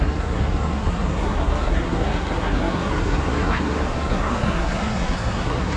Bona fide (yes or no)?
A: no